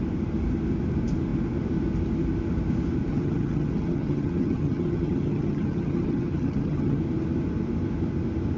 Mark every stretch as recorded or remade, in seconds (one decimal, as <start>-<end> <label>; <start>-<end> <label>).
0.0-3.1 recorded; 3.1-7.0 remade; 7.0-8.6 recorded